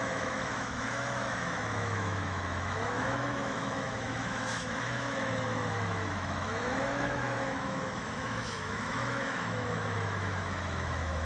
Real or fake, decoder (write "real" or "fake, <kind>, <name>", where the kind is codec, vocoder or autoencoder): fake, autoencoder, DAC-VAE